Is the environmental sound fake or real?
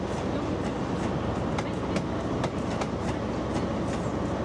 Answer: real